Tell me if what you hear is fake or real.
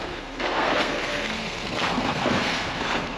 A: fake